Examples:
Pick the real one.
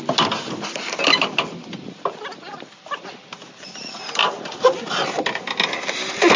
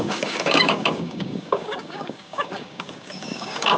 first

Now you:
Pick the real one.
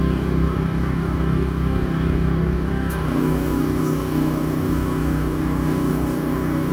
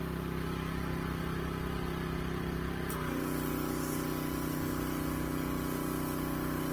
second